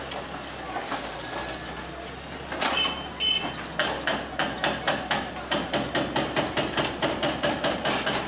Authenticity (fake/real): real